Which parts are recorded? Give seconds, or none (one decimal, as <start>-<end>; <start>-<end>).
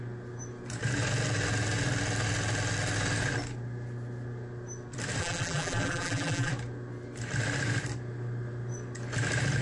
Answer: 0.0-5.2; 6.5-9.6